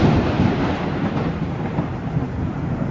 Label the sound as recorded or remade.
remade